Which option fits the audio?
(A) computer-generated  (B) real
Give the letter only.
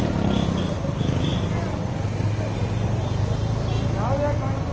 B